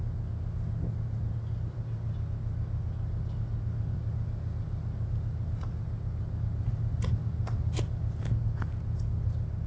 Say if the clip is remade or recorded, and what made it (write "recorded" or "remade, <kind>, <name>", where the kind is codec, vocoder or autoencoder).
recorded